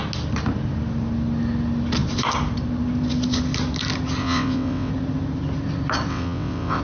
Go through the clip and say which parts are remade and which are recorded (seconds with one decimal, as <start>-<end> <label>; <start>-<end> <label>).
0.0-4.2 recorded; 4.2-4.9 remade; 4.9-6.1 recorded; 6.1-6.8 remade